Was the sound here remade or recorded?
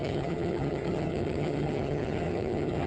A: remade